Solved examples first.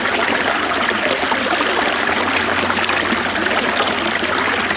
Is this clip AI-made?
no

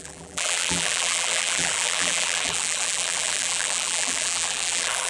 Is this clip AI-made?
yes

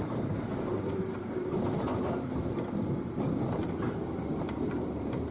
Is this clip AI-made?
yes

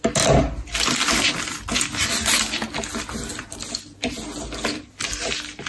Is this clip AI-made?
no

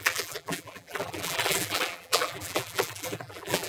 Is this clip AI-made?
yes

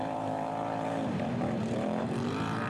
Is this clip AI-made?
yes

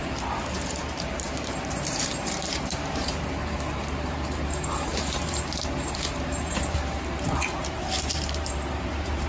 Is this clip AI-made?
yes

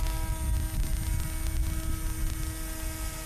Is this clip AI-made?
no